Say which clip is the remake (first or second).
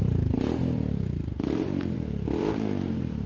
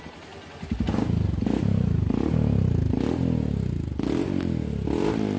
first